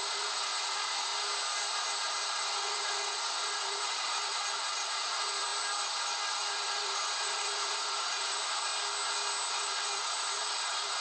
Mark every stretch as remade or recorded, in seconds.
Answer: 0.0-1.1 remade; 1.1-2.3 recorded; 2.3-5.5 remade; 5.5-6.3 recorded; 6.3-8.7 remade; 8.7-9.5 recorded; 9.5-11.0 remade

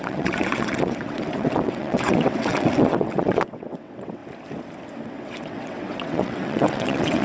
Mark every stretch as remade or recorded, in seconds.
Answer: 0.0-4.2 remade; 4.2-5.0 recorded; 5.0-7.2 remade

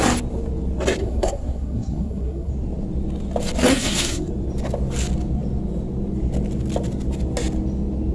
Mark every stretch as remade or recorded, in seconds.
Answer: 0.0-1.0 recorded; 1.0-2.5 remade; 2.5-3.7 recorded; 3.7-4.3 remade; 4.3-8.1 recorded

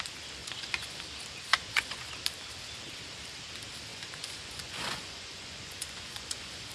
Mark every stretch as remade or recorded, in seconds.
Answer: 0.0-0.4 recorded; 0.4-1.0 remade; 1.0-1.5 recorded; 1.5-2.1 remade; 2.1-3.9 recorded; 3.9-6.7 remade

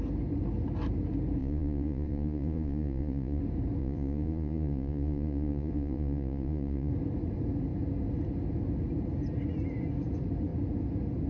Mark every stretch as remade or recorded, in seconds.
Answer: 0.0-1.4 recorded; 1.4-3.4 remade; 3.4-3.8 recorded; 3.8-6.9 remade; 6.9-11.3 recorded

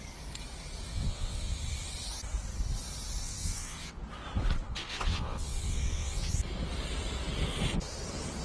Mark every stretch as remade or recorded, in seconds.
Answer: 0.0-0.9 recorded; 0.9-1.6 remade; 1.6-3.2 recorded; 3.2-4.0 remade; 4.0-4.8 recorded; 4.8-6.3 remade; 6.3-8.4 recorded

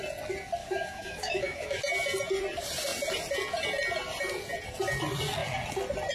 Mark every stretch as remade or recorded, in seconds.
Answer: 0.0-0.6 recorded; 0.6-1.8 remade; 1.8-6.1 recorded